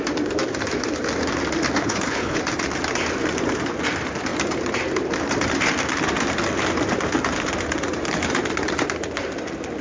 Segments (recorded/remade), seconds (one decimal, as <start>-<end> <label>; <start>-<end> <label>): 0.0-1.8 recorded; 1.8-2.4 remade; 2.4-9.8 recorded